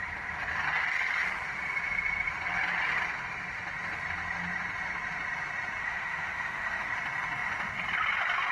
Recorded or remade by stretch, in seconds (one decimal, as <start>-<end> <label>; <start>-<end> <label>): 0.0-5.8 recorded; 5.8-6.9 remade; 6.9-8.5 recorded